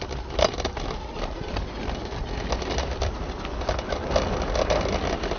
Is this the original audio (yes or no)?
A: yes